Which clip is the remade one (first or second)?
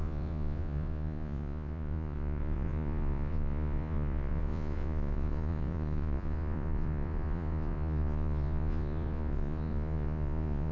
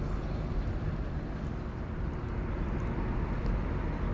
first